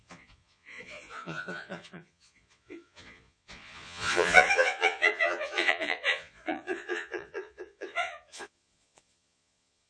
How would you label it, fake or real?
fake